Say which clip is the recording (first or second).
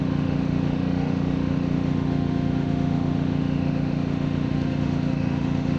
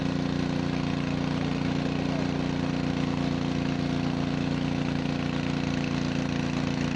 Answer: second